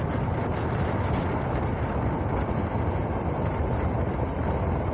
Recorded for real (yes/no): yes